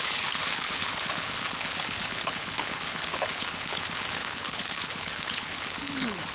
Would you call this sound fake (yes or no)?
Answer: yes